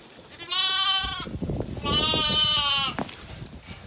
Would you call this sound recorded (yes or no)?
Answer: yes